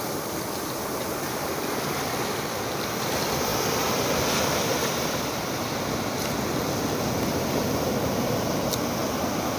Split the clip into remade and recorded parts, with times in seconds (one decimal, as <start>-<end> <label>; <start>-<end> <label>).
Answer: 0.0-9.6 recorded